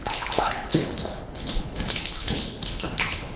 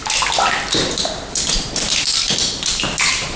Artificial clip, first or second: first